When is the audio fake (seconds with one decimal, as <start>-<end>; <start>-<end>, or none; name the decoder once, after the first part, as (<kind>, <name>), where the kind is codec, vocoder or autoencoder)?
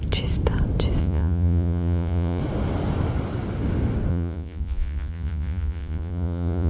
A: 1.0-2.4 (vocoder, Vocos); 4.1-6.7